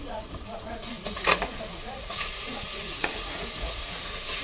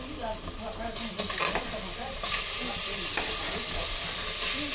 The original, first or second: second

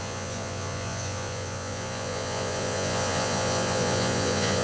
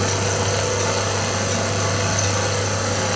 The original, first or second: second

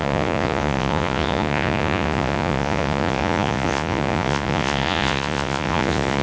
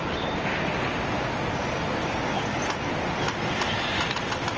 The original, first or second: second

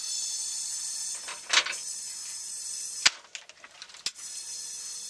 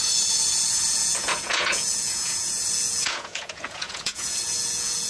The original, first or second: first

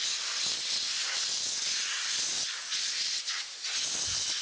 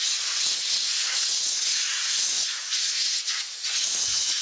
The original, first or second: first